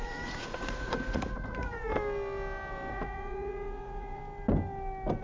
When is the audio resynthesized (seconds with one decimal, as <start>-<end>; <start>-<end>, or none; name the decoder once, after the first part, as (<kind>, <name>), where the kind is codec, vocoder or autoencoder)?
0.0-1.9 (vocoder, Vocos); 2.9-4.2